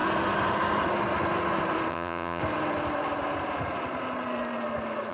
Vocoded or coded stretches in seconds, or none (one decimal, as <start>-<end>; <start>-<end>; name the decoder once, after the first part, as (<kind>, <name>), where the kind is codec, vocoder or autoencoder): 1.9-2.4 (vocoder, HiFi-GAN)